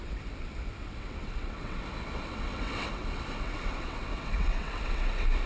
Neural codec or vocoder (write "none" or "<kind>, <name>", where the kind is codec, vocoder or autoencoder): vocoder, WaveNeXt